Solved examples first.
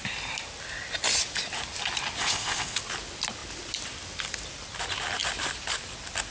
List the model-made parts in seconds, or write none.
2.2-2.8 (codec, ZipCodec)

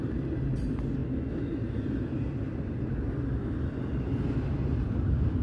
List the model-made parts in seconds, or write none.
1.0-1.5 (autoencoder, DAC-VAE)

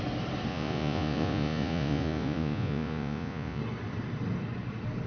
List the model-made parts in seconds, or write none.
0.5-3.6 (vocoder, Vocos)

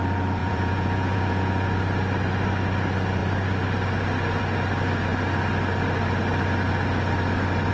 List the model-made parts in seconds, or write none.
0.4-1.7 (vocoder, Vocos)

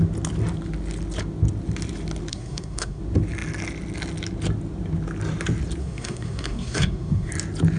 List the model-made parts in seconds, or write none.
2.3-3.0 (codec, SNAC); 5.8-7.3

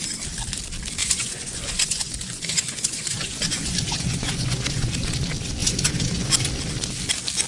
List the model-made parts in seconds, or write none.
1.0-4.9 (vocoder, Vocos); 5.6-6.3